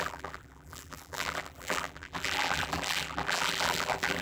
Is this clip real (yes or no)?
no